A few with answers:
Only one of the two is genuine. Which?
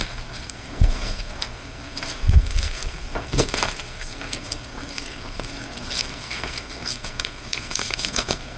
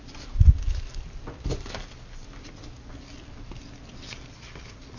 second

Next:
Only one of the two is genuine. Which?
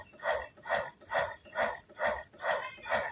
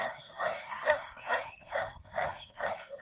first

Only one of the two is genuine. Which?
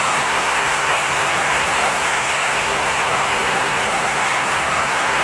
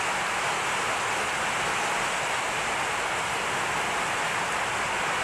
second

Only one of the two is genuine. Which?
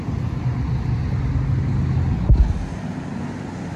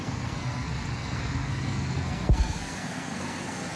first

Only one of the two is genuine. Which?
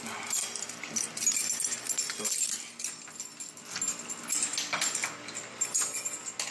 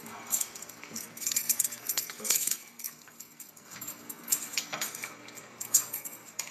first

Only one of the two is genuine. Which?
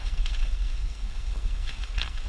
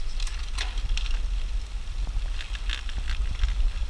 second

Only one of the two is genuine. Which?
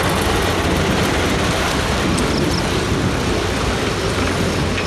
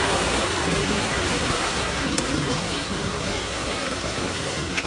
first